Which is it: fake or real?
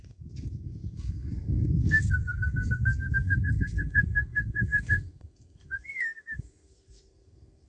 fake